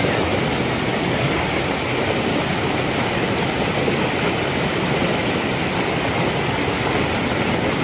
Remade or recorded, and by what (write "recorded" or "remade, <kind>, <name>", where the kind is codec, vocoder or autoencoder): recorded